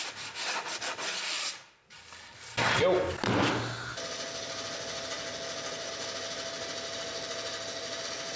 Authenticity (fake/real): real